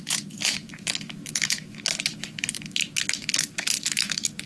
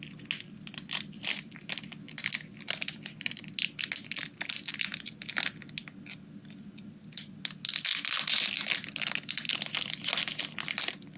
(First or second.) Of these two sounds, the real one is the second